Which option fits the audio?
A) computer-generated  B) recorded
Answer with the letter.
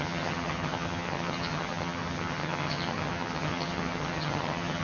A